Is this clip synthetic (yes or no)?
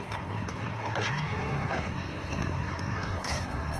yes